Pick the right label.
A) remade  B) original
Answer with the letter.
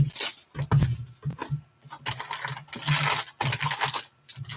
B